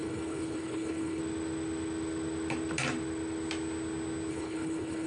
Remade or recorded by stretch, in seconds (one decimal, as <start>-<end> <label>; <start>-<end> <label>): 0.0-1.2 remade; 1.2-4.3 recorded; 4.3-5.1 remade